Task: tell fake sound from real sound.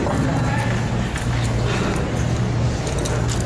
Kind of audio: real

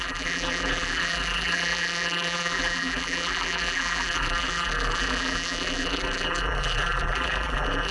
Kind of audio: fake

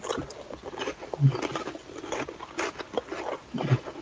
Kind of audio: real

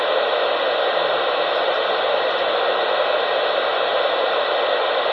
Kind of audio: real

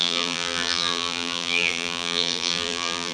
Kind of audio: fake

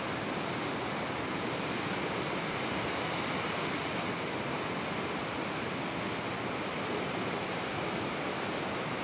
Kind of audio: real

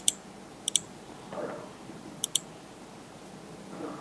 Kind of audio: real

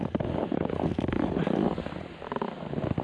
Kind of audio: real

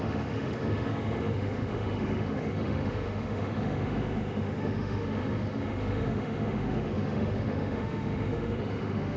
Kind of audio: fake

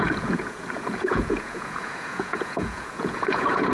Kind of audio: fake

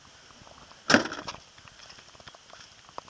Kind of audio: real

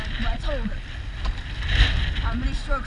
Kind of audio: real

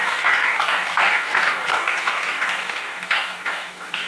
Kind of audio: fake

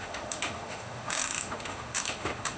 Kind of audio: fake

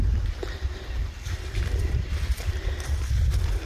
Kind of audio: real